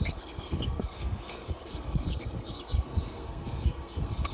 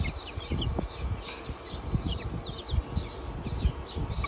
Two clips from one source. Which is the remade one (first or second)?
first